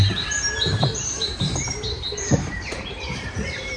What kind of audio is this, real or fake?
fake